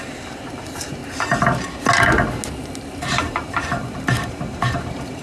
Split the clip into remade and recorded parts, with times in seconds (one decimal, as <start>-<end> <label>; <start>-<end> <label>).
0.0-1.0 remade; 1.0-3.2 recorded; 3.2-5.2 remade